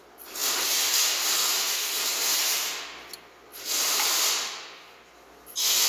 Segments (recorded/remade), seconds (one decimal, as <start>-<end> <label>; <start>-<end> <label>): 0.0-0.4 recorded; 0.4-2.4 remade; 2.4-3.5 recorded; 3.5-4.3 remade; 4.3-5.9 recorded